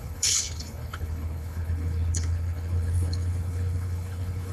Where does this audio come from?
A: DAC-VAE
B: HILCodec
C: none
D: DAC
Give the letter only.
B